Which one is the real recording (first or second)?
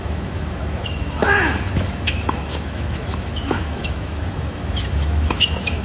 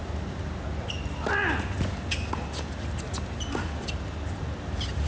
second